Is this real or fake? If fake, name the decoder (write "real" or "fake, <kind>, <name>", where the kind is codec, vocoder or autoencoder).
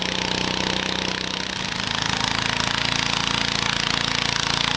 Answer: real